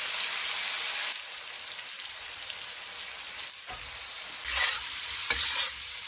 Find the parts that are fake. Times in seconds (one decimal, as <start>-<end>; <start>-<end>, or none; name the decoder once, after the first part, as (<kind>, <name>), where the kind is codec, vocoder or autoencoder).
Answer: none